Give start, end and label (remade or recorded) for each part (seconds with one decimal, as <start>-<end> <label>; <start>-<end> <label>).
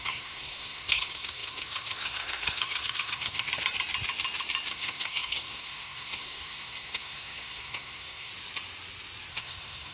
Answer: 0.0-3.5 remade; 3.5-4.7 recorded; 4.7-8.3 remade; 8.3-9.3 recorded; 9.3-9.9 remade